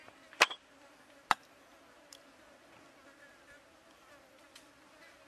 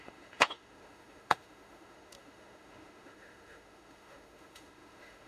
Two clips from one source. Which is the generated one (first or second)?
second